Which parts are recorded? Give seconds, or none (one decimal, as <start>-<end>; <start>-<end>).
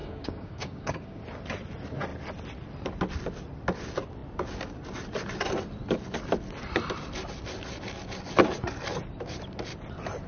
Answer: 1.2-10.3